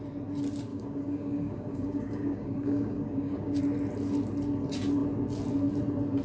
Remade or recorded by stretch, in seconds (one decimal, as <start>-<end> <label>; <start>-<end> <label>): 0.0-0.7 recorded; 0.7-3.6 remade; 3.6-6.2 recorded